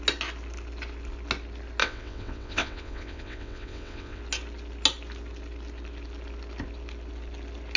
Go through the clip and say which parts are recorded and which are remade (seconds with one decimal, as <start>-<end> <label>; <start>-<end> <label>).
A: 0.0-1.8 recorded; 1.8-4.2 remade; 4.2-7.8 recorded